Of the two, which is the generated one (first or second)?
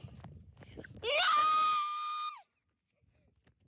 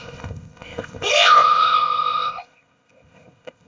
second